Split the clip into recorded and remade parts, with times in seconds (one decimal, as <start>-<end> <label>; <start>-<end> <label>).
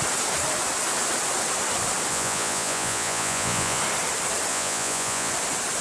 0.0-2.1 recorded; 2.1-3.8 remade; 3.8-4.5 recorded; 4.5-5.3 remade; 5.3-5.8 recorded